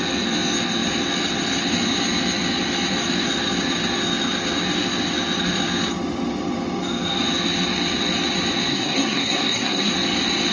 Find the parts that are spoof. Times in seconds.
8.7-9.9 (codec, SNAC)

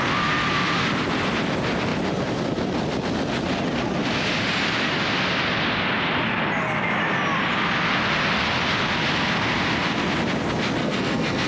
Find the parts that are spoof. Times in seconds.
10.8-11.5 (codec, SNAC)

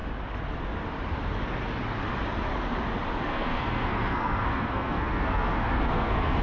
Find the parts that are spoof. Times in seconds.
3.2-6.4 (codec, SNAC)